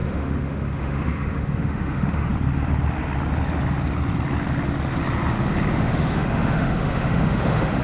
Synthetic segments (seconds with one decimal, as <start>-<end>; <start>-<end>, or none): 0.0-2.3; 5.7-7.8